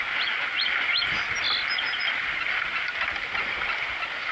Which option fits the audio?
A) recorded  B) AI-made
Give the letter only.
A